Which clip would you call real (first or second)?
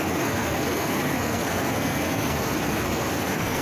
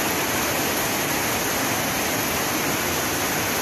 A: second